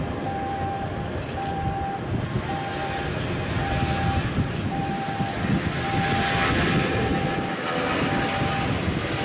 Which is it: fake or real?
real